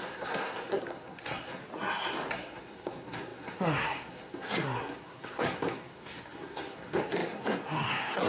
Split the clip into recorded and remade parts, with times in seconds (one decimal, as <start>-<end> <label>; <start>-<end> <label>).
0.0-1.6 remade; 1.6-2.3 recorded; 2.3-8.3 remade